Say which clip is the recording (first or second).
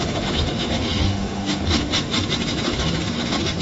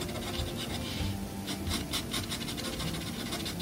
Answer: second